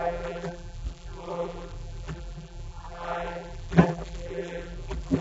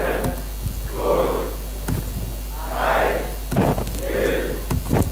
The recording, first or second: second